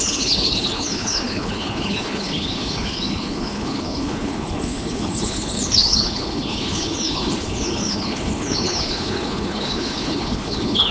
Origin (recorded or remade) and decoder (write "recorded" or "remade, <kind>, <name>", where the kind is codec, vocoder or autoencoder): remade, codec, HILCodec